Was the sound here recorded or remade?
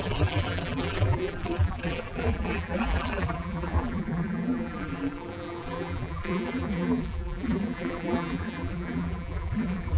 remade